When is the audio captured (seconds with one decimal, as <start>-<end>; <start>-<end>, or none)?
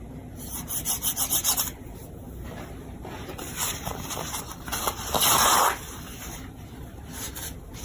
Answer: none